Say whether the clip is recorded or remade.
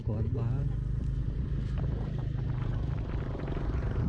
remade